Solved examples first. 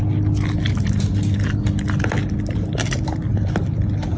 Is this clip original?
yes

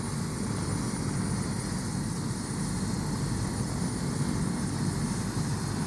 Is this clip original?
yes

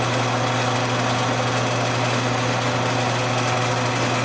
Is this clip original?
yes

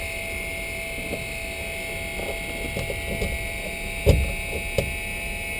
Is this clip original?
yes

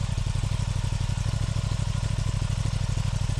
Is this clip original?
yes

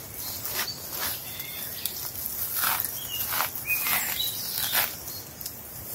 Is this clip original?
yes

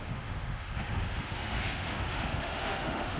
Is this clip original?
no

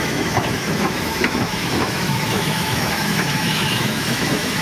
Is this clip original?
no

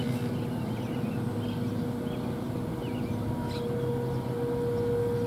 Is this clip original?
yes